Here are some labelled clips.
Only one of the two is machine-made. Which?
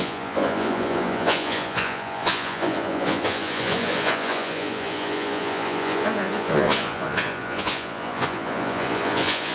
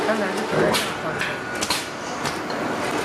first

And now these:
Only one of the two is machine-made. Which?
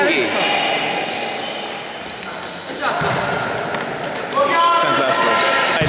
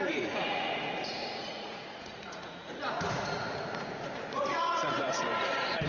second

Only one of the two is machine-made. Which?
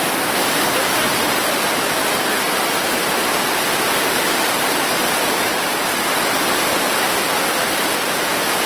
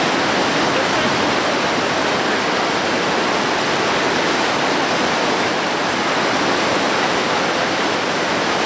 first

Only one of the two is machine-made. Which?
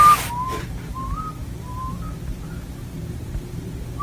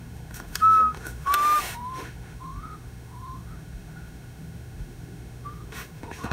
second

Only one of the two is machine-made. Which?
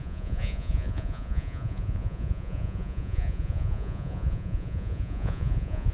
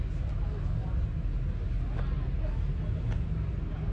first